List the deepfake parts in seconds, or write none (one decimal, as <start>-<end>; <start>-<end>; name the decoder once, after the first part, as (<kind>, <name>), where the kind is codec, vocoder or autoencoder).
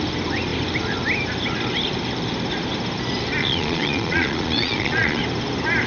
3.4-5.2 (vocoder, Vocos)